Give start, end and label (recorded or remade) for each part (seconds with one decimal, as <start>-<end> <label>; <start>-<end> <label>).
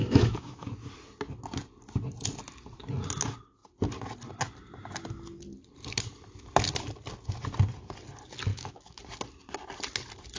0.0-0.7 remade; 0.7-8.5 recorded; 8.5-9.0 remade; 9.0-10.4 recorded